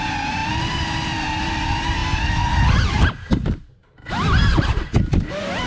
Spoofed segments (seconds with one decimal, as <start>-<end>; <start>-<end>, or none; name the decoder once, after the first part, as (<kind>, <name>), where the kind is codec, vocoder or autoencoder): 0.0-2.0 (vocoder, BigVGAN v2); 2.9-4.0